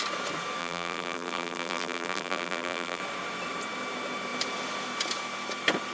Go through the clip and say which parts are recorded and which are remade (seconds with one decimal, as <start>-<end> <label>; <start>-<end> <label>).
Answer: 0.0-0.6 recorded; 0.6-3.0 remade; 3.0-5.9 recorded